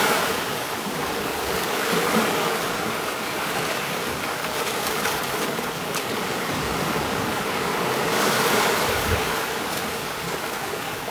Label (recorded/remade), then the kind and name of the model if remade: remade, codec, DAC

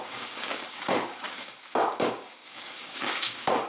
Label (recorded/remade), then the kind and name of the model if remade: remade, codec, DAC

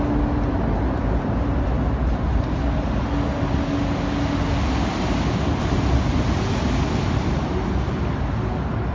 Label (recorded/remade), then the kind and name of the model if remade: recorded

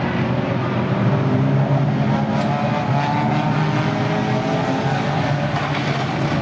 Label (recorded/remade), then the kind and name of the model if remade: recorded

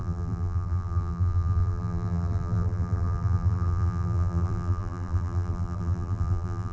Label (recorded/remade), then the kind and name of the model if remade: remade, vocoder, BigVGAN v2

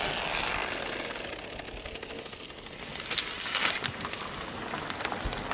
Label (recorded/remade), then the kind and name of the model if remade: recorded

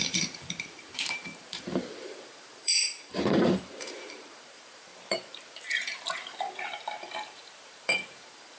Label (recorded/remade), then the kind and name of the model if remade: remade, vocoder, BigVGAN v2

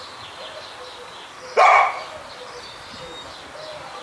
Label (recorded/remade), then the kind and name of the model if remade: recorded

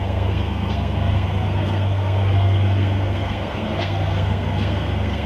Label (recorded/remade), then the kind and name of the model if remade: remade, codec, SNAC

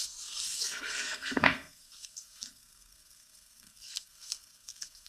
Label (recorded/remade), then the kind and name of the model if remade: remade, codec, SNAC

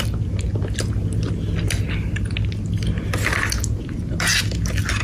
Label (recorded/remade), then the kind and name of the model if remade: recorded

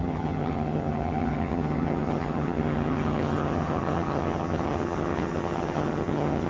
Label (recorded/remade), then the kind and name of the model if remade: remade, vocoder, HiFi-GAN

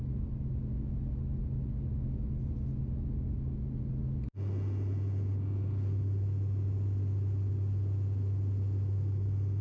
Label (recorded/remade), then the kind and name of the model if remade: recorded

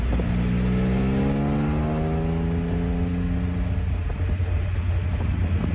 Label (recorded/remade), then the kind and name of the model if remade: recorded